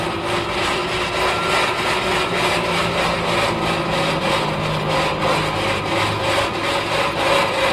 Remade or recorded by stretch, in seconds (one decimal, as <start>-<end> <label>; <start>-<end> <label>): 0.0-7.7 recorded